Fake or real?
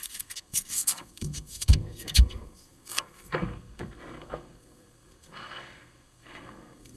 fake